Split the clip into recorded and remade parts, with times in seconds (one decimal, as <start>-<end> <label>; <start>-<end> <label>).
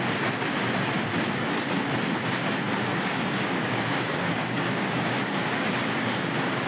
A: 0.0-2.9 recorded; 2.9-6.7 remade